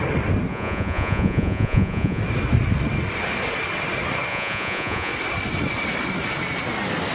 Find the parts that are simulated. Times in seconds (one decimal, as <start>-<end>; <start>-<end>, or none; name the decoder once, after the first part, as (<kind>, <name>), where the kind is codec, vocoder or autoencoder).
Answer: 0.5-2.2 (vocoder, Vocos); 4.3-5.1